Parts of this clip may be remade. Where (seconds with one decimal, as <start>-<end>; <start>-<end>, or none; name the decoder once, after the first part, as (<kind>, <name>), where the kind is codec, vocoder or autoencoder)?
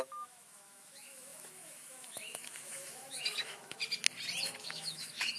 0.0-3.8 (autoencoder, DAC-VAE); 4.4-5.4